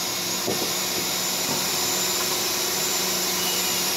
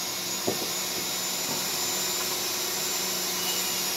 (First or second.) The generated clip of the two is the first